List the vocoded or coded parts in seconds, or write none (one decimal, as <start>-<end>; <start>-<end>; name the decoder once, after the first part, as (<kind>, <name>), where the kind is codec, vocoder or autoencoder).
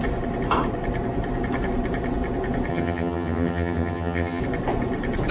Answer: 2.7-4.4 (vocoder, HiFi-GAN)